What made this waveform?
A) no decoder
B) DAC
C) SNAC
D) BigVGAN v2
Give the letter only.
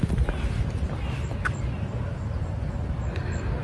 A